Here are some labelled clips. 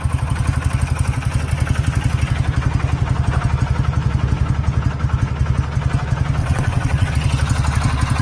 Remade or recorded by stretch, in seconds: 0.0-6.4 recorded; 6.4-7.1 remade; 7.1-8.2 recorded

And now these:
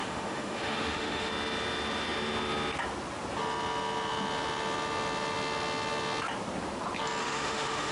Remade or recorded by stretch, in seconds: 0.0-1.3 remade; 1.3-7.2 recorded; 7.2-7.9 remade

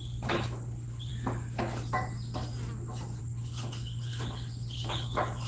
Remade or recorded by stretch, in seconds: 0.0-1.1 remade; 1.1-3.2 recorded; 3.2-5.5 remade